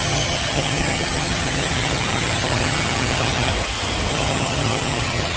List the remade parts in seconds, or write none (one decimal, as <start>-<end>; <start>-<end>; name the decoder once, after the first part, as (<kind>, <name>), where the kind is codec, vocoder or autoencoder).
0.0-3.5 (vocoder, HiFi-GAN); 4.1-5.4